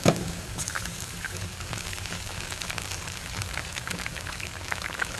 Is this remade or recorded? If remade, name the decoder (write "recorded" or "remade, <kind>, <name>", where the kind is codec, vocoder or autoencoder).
remade, codec, DAC